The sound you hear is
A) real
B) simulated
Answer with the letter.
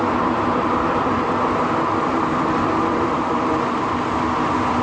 B